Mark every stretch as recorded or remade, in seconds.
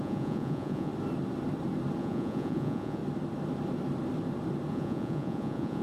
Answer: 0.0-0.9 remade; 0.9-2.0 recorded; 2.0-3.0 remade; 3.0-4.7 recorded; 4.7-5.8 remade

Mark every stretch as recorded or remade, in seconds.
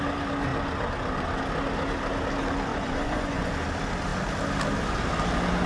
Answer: 0.0-2.7 recorded; 2.7-3.5 remade; 3.5-5.7 recorded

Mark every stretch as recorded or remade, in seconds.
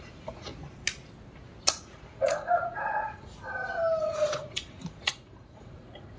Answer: 0.0-0.5 remade; 0.5-1.7 recorded; 1.7-3.3 remade; 3.3-4.0 recorded; 4.0-6.2 remade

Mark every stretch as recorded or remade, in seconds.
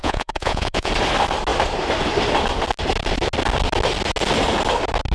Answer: 0.0-0.9 remade; 0.9-5.1 recorded